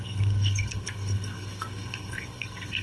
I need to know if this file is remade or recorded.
remade